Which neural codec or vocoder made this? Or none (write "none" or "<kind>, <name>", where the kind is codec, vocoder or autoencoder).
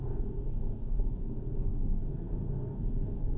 codec, SNAC